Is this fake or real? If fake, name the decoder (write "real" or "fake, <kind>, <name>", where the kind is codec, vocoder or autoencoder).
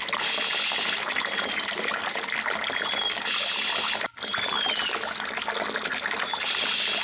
real